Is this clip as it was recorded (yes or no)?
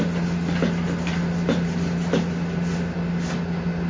yes